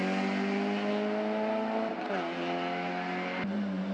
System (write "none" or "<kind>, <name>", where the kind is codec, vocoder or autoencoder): none